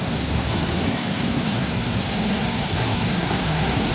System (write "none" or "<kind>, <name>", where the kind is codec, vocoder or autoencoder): codec, SNAC